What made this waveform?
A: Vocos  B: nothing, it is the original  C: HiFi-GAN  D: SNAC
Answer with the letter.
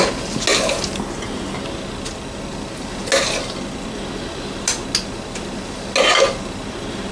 B